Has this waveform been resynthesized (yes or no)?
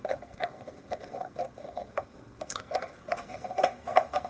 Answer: yes